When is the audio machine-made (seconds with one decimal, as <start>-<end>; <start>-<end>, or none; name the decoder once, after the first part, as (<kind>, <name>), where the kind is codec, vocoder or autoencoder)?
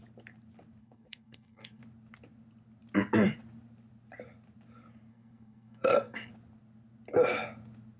0.8-1.8 (codec, SNAC); 5.1-6.3